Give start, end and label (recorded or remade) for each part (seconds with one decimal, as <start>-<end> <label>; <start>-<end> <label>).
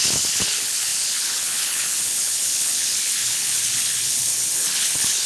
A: 0.0-5.3 remade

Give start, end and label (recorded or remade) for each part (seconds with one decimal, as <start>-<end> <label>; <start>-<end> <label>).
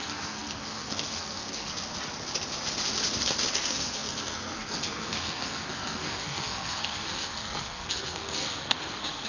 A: 0.0-1.7 remade; 1.7-3.5 recorded; 3.5-9.3 remade